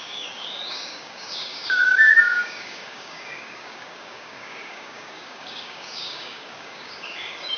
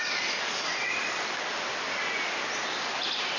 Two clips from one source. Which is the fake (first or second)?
first